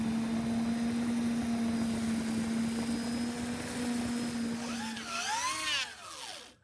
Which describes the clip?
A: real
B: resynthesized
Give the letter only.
A